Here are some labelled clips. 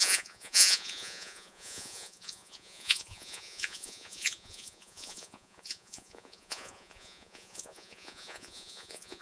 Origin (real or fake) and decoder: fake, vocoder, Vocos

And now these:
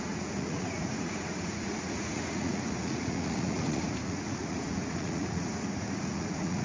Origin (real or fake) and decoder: fake, vocoder, Vocos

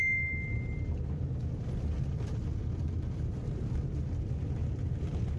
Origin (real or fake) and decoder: real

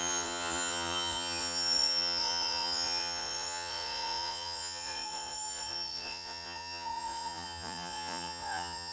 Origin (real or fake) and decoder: fake, vocoder, Vocos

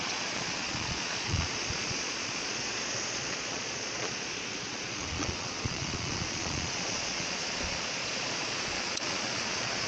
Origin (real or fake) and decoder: fake, vocoder, Vocos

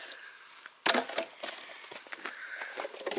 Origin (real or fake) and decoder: real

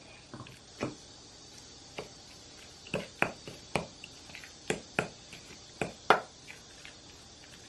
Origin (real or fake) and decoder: real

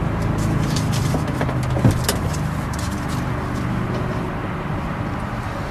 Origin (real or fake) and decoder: real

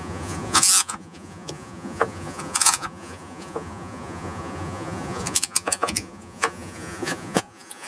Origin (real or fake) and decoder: fake, vocoder, Vocos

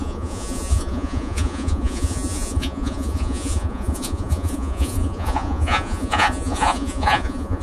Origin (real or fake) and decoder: fake, vocoder, Vocos